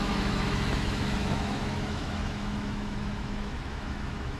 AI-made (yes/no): yes